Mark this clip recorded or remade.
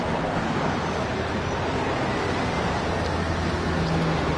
recorded